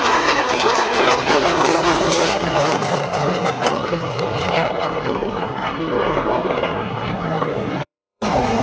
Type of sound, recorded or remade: remade